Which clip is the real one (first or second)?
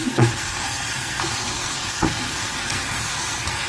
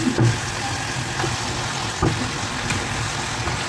second